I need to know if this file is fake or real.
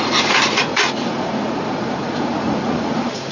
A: fake